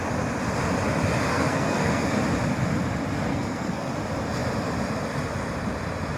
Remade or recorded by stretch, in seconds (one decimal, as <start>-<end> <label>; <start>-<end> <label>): 0.0-1.3 recorded; 1.3-2.1 remade; 2.1-3.3 recorded; 3.3-3.9 remade; 3.9-6.2 recorded